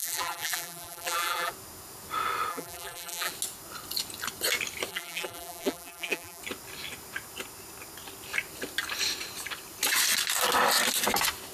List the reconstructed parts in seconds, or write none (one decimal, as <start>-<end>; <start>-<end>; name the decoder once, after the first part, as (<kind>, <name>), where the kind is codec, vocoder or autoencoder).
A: 0.0-1.5 (vocoder, BigVGAN v2); 2.5-3.3; 4.9-6.4